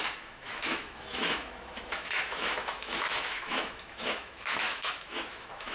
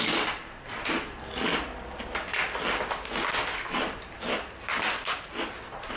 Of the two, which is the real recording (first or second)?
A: second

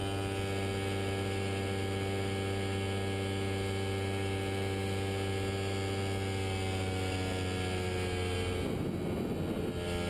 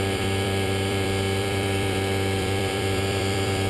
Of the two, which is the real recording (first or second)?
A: first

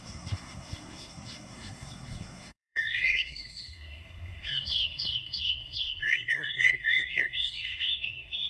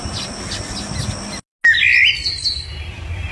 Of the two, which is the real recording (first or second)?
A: second